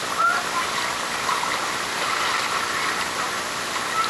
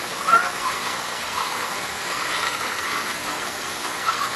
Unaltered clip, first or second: first